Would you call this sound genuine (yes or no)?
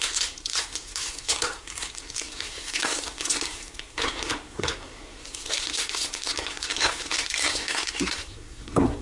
no